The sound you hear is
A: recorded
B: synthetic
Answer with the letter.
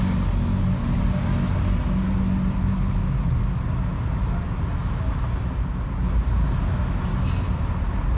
A